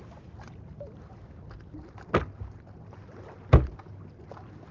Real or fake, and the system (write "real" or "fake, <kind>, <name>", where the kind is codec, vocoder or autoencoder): real